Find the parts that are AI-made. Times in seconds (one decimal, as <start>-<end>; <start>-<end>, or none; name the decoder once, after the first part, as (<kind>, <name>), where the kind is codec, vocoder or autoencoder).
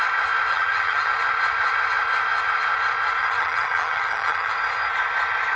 0.5-1.1 (vocoder, HiFi-GAN); 3.2-4.5